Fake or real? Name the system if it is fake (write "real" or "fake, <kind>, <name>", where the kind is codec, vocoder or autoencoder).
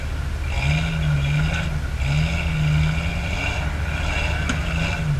real